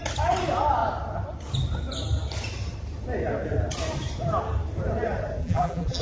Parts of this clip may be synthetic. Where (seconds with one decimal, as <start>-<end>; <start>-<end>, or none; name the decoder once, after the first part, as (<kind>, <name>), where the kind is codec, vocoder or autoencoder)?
5.4-6.0 (vocoder, BigVGAN v2)